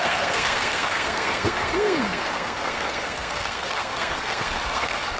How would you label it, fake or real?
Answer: fake